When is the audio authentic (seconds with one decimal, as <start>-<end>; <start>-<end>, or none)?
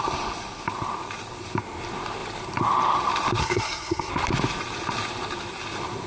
0.0-3.4; 4.1-6.1